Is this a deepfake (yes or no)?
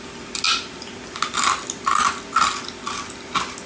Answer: no